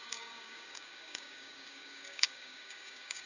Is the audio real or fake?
fake